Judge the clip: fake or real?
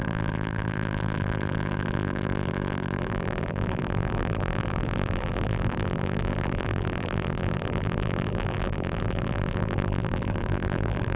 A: fake